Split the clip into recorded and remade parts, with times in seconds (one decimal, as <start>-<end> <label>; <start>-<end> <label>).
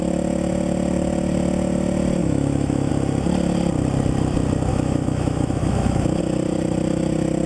0.0-2.2 recorded; 2.2-2.9 remade; 2.9-4.7 recorded; 4.7-6.2 remade; 6.2-7.5 recorded